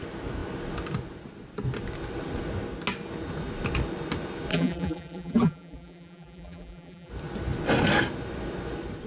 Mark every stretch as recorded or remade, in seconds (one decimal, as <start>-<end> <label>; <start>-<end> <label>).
0.0-4.5 recorded; 4.5-7.1 remade; 7.1-9.1 recorded